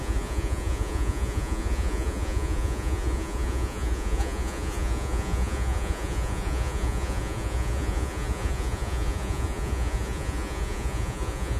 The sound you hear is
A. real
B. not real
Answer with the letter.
B